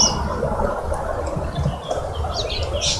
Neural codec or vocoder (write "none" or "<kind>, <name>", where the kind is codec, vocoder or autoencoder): none